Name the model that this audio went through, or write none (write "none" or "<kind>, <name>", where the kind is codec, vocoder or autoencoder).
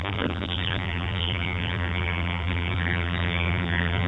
vocoder, BigVGAN v2